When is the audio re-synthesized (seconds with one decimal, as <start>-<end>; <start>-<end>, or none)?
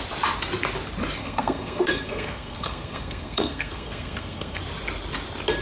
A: 1.2-4.6